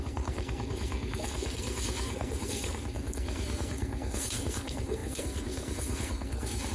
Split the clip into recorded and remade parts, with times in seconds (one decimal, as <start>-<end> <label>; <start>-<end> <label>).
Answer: 0.0-6.7 remade